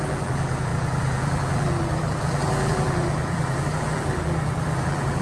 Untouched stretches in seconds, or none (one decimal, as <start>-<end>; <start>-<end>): none